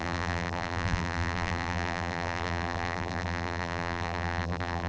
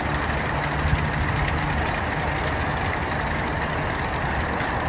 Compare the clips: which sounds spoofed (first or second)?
first